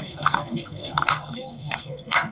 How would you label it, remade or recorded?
remade